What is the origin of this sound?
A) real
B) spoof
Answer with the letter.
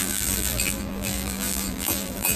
B